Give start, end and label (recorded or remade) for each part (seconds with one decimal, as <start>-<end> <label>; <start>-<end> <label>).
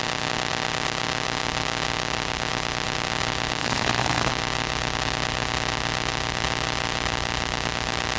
0.0-3.6 recorded; 3.6-4.3 remade; 4.3-8.2 recorded